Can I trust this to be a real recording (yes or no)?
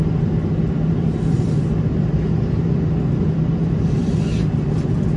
no